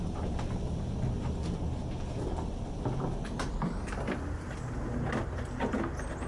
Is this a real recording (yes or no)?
yes